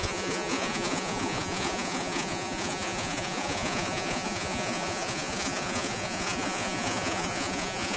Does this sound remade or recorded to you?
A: remade